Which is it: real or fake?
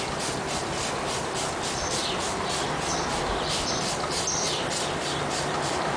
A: real